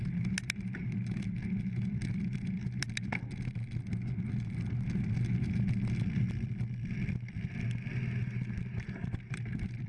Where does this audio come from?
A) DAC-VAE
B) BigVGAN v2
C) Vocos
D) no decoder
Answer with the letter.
D